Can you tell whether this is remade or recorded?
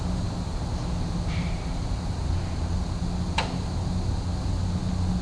recorded